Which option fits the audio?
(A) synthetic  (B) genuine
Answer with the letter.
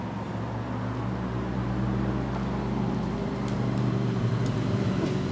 B